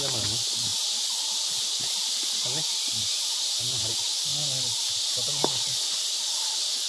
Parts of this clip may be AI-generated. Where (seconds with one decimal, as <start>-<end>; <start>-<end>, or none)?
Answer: none

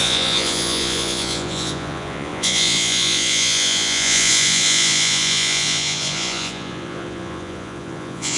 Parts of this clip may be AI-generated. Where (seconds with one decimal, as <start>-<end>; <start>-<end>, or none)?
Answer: 0.0-8.4

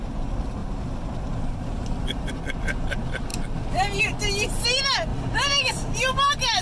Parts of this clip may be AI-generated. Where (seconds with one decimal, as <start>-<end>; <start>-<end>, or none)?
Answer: 0.6-2.3; 5.1-5.7

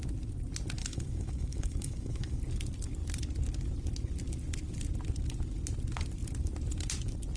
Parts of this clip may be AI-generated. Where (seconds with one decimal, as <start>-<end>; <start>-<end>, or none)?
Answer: 0.8-2.4

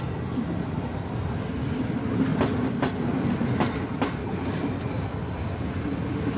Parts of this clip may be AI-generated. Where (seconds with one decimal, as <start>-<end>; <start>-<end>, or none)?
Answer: 4.2-5.0

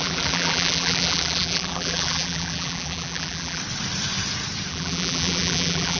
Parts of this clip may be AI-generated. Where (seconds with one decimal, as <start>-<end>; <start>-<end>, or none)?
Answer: 0.0-3.6; 4.7-6.0